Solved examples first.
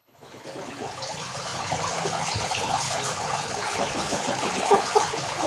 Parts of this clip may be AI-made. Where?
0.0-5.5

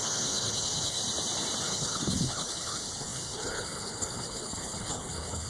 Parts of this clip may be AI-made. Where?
0.0-1.0; 1.6-5.5

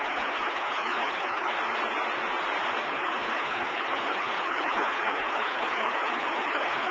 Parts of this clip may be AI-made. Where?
0.0-1.5; 2.8-6.9

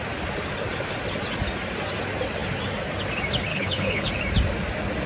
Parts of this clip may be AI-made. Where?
3.5-4.1

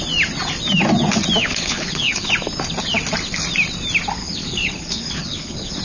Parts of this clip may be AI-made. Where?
1.4-2.3; 4.2-5.8

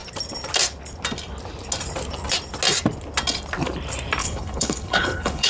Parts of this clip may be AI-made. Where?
4.2-5.5

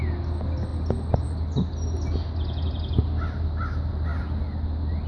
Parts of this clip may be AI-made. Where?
none

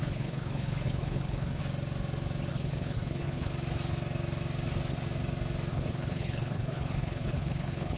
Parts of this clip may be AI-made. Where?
0.0-1.6; 2.5-3.5; 5.7-8.0